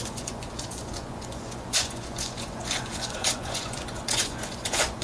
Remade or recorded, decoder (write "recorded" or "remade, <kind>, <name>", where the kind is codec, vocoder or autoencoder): remade, vocoder, Vocos